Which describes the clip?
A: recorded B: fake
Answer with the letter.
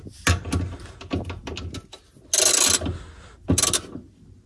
A